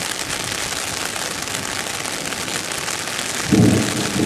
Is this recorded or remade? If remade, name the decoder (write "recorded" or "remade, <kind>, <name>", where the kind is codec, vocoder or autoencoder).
recorded